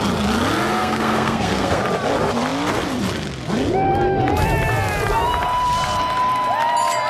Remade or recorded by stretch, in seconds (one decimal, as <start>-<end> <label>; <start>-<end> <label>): 0.0-0.8 recorded; 0.8-1.8 remade; 1.8-7.1 recorded